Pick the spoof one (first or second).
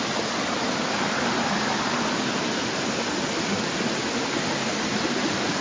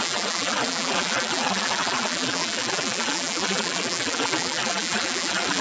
second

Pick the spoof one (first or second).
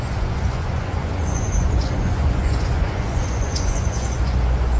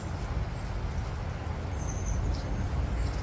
first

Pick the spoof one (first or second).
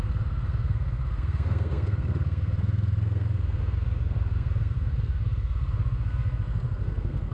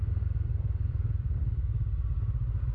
first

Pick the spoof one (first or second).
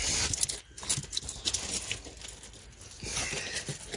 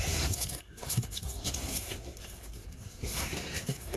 second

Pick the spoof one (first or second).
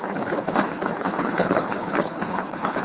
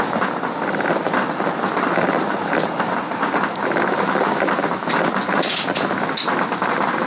first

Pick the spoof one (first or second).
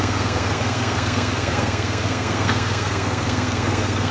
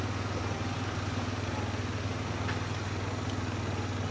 first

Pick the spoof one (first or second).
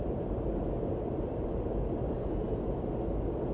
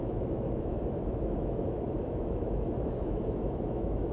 second